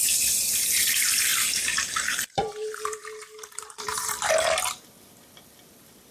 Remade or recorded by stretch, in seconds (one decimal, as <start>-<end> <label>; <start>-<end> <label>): 0.0-0.7 remade; 0.7-1.3 recorded; 1.3-4.3 remade; 4.3-6.1 recorded